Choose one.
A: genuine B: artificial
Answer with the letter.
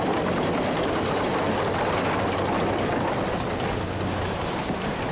A